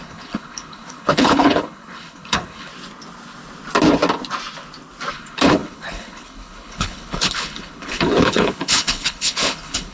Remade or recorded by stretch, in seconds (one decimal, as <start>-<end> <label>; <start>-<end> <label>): 0.0-2.7 remade; 2.7-5.1 recorded; 5.1-9.9 remade